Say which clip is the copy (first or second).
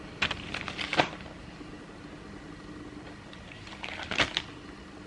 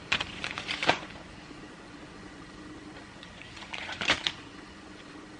second